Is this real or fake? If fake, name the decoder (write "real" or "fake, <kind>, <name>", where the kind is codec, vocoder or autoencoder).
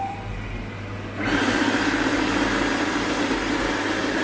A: real